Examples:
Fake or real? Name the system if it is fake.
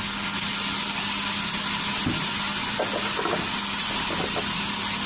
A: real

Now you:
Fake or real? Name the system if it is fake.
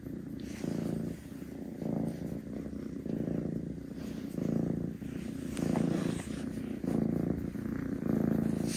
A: real